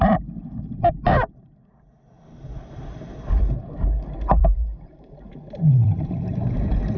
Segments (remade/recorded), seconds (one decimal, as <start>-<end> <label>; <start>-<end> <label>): 0.0-0.4 remade; 0.4-2.7 recorded; 2.7-7.0 remade